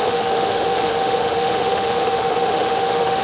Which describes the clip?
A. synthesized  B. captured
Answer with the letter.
A